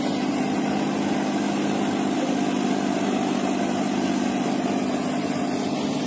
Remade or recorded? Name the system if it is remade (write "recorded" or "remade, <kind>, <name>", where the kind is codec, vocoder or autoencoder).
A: recorded